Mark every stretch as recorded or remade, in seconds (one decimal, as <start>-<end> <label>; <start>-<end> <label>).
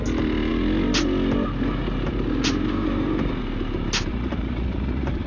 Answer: 0.0-4.1 recorded; 4.1-5.3 remade